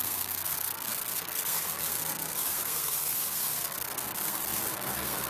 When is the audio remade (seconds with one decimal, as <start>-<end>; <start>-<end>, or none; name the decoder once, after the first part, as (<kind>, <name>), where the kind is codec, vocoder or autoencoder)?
0.0-5.3 (codec, SNAC)